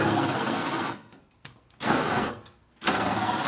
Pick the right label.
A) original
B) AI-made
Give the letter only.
B